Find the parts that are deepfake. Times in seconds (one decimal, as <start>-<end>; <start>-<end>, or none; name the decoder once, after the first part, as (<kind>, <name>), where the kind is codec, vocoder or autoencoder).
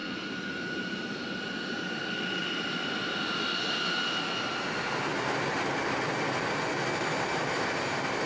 0.0-1.4 (vocoder, BigVGAN v2); 7.3-8.3